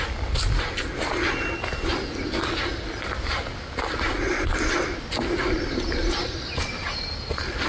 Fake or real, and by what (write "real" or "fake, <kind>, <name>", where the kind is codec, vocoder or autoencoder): real